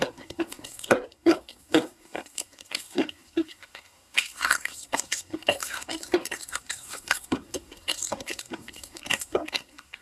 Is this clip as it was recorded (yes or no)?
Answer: no